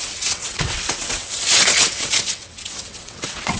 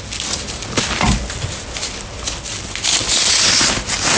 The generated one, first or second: first